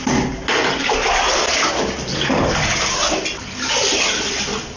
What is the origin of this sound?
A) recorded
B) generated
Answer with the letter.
A